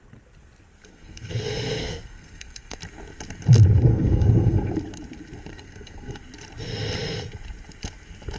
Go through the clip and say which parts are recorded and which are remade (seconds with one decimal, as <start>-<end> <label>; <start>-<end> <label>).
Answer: 0.0-0.9 recorded; 0.9-2.8 remade; 2.8-3.9 recorded; 3.9-4.7 remade; 4.7-5.5 recorded; 5.5-6.2 remade; 6.2-8.4 recorded